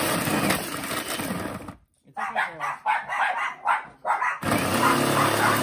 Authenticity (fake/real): real